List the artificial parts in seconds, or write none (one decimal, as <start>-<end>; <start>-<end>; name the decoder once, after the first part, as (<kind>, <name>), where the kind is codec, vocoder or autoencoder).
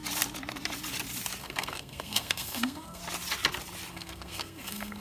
1.4-3.0 (codec, SNAC); 3.9-5.0